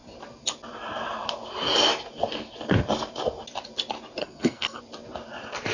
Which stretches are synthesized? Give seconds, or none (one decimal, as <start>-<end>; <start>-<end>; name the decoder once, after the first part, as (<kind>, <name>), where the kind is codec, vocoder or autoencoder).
4.2-4.8 (codec, SNAC)